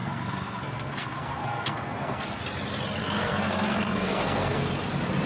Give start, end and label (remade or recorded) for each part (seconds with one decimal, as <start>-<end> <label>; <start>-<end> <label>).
0.0-2.4 remade; 2.4-3.0 recorded; 3.0-4.7 remade; 4.7-5.3 recorded